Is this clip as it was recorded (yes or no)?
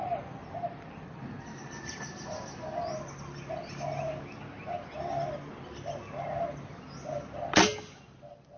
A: yes